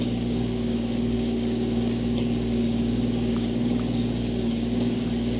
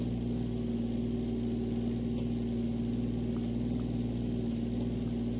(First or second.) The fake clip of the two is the first